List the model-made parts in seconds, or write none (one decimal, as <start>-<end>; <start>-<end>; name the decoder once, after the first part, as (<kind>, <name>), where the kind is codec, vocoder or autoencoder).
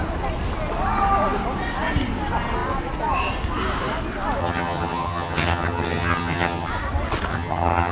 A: 4.4-6.7 (vocoder, HiFi-GAN); 7.3-7.9